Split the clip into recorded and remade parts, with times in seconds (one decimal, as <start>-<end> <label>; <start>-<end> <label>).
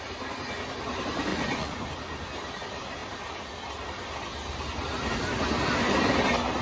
0.0-1.3 recorded; 1.3-1.9 remade; 1.9-6.6 recorded